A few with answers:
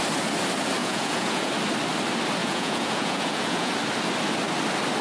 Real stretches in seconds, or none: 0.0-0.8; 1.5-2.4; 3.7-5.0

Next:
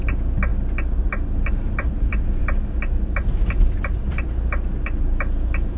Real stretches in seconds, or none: 0.0-5.8

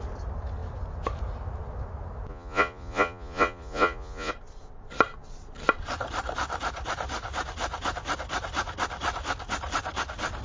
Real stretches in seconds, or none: 0.0-2.3; 4.3-10.4

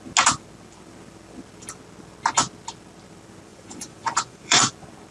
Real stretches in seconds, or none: 0.0-3.5; 4.6-5.1

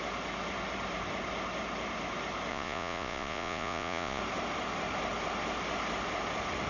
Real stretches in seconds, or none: 0.0-2.5; 4.2-6.7